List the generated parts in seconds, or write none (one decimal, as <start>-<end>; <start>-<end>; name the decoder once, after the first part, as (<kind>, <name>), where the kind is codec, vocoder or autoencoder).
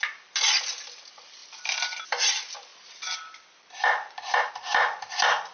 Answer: none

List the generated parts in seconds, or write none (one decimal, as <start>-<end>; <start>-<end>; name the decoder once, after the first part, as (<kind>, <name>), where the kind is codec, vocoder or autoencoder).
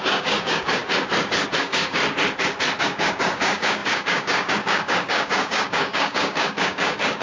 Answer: 0.0-0.8 (codec, DAC); 1.6-2.0; 2.8-7.2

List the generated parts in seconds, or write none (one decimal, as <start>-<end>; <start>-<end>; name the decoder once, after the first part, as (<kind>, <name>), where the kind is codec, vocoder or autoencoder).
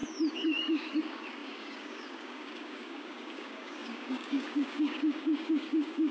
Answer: 0.0-6.1 (codec, DAC)